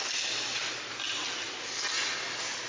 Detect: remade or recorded recorded